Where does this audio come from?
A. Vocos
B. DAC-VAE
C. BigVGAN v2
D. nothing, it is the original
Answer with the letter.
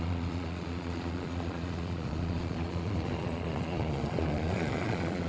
A